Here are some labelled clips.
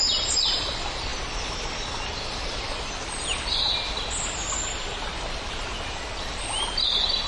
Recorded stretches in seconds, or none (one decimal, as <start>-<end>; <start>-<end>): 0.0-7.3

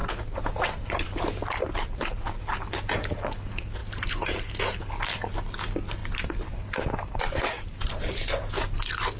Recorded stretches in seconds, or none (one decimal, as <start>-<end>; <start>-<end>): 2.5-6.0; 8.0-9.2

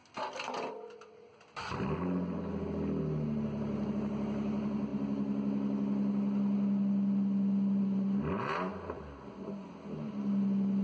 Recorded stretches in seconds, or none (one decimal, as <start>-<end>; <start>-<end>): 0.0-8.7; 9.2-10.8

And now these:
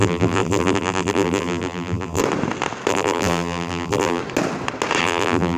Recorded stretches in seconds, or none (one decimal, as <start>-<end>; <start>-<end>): 2.2-2.9; 4.2-5.0